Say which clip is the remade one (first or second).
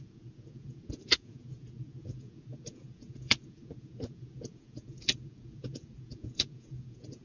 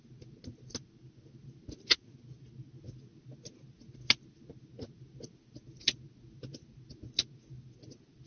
first